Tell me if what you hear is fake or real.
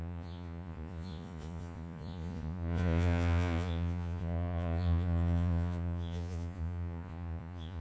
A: fake